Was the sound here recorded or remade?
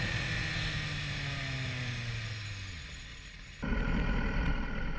recorded